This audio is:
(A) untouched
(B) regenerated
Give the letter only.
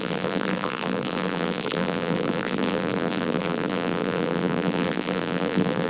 B